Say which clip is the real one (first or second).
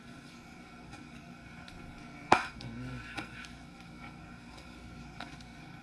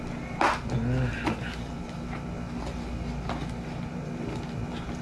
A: second